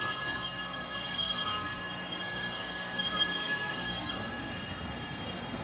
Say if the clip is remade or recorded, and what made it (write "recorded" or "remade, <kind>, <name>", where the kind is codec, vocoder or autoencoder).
remade, codec, SNAC